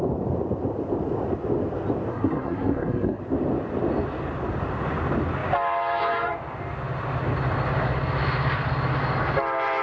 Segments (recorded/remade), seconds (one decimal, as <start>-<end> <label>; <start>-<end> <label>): 0.0-2.1 recorded; 2.1-3.2 remade; 3.2-9.8 recorded